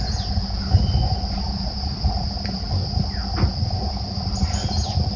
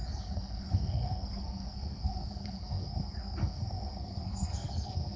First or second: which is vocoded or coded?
second